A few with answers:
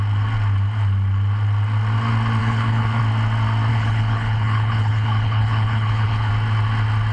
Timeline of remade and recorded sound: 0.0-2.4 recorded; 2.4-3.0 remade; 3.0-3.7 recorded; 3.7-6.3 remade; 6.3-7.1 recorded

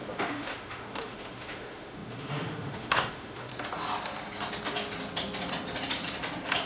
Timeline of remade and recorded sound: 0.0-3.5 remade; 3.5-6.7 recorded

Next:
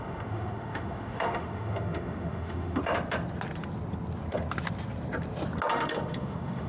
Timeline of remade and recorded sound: 0.0-2.8 remade; 2.8-5.7 recorded; 5.7-6.7 remade

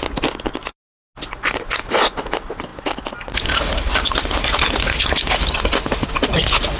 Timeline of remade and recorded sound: 0.0-6.8 recorded

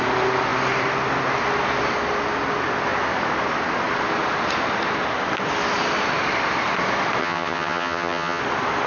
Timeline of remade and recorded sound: 0.0-7.2 recorded; 7.2-8.4 remade; 8.4-8.9 recorded

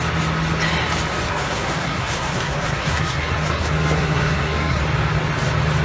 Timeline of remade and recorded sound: 0.0-1.3 recorded; 1.3-4.8 remade; 4.8-5.8 recorded

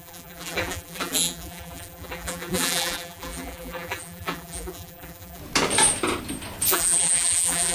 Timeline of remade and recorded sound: 0.0-5.4 remade; 5.4-6.7 recorded; 6.7-7.7 remade